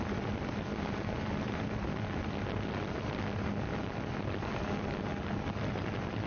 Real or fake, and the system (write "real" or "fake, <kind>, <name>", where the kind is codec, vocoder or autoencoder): real